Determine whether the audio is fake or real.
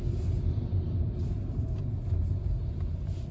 real